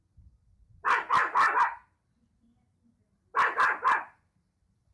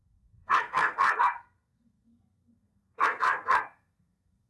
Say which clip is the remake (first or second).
second